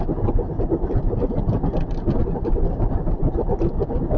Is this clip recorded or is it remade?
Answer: recorded